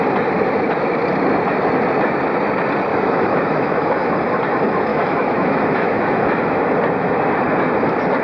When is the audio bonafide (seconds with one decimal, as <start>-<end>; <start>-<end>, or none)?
0.0-2.9; 4.1-4.9; 6.6-8.2